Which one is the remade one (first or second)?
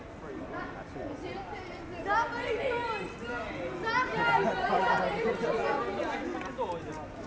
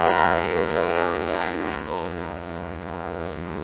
second